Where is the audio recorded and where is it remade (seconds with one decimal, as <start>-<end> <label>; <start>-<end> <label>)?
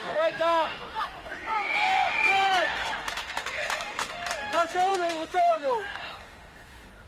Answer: 0.0-7.1 remade